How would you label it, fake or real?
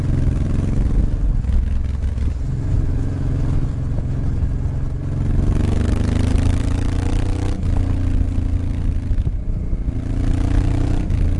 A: real